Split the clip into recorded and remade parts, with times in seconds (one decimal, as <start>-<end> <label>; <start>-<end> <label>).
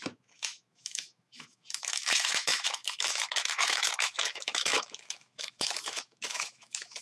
0.0-7.0 remade